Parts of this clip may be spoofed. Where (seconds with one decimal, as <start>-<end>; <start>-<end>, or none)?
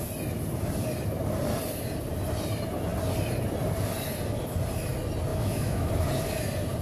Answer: 5.3-5.9